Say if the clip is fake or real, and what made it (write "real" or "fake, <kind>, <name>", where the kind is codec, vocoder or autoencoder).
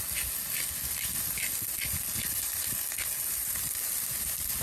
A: real